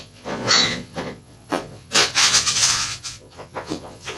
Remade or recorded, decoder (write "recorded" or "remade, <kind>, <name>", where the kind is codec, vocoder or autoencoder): remade, vocoder, Vocos